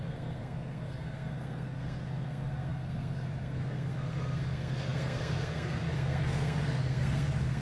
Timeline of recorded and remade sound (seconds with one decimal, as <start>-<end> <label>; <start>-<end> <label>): 0.0-7.6 remade